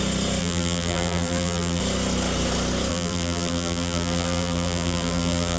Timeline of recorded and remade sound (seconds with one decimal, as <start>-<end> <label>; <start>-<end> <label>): 0.0-0.4 recorded; 0.4-1.8 remade; 1.8-2.9 recorded; 2.9-5.6 remade